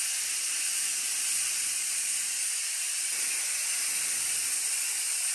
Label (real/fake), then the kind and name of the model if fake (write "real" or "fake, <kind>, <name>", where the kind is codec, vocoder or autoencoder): real